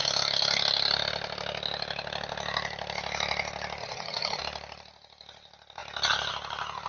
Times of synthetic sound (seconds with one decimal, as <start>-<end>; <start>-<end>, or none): 3.8-4.4